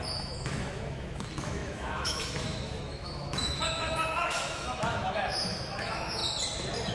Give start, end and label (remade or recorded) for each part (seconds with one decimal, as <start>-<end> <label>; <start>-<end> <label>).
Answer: 0.0-6.2 remade; 6.2-6.9 recorded